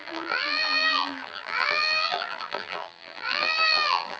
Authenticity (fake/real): fake